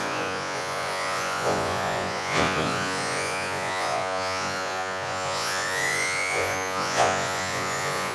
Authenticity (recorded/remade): remade